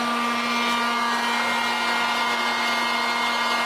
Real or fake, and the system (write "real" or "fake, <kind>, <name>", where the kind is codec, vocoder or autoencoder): real